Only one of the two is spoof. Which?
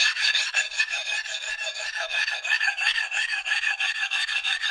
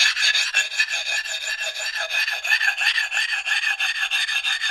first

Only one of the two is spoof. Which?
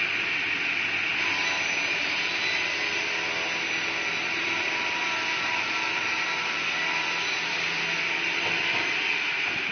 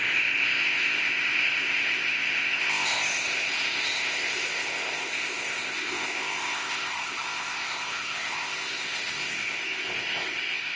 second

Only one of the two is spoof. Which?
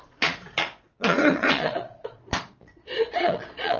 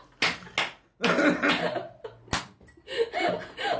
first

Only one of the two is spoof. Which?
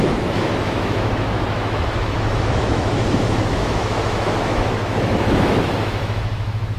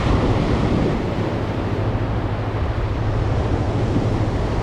first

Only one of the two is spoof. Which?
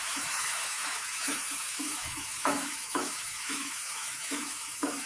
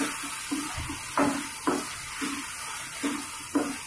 first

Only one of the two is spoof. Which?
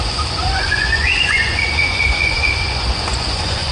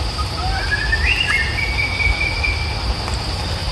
first